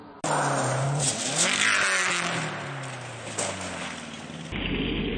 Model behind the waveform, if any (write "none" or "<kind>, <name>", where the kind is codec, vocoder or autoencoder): none